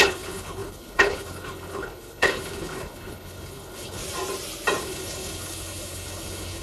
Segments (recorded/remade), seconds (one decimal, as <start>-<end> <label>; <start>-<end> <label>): 0.0-4.0 remade; 4.0-4.8 recorded; 4.8-6.6 remade